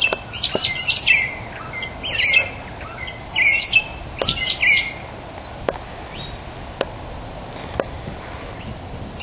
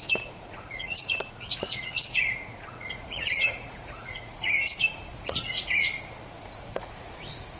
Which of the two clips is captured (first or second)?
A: first